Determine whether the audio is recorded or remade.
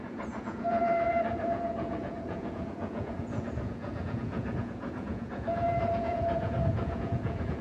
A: remade